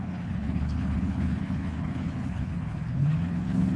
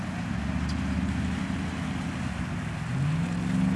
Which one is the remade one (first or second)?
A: first